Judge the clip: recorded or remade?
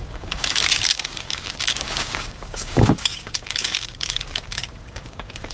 remade